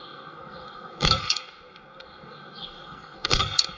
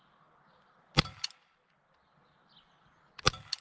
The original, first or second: second